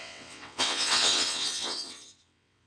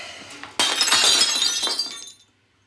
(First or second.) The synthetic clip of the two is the first